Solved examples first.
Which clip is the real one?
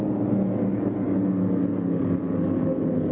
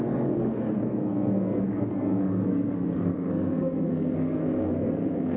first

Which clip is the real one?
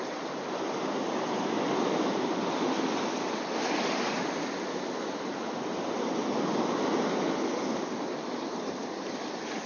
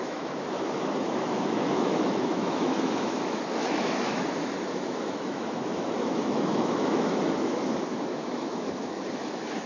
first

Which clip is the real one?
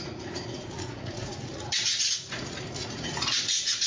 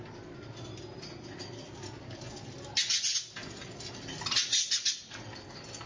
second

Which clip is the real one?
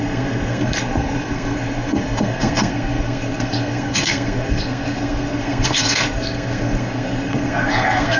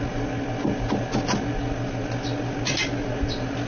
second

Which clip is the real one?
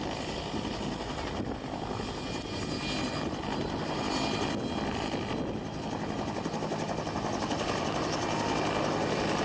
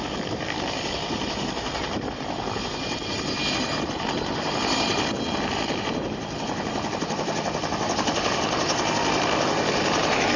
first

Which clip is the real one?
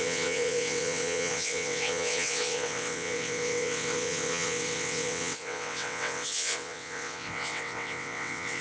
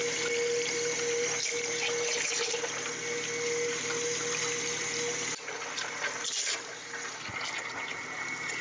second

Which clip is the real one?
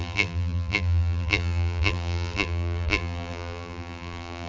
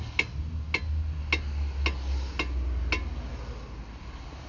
second